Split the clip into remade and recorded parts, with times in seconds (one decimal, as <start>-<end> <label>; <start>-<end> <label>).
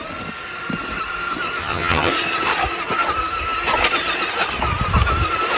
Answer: 0.0-1.6 recorded; 1.6-2.1 remade; 2.1-5.6 recorded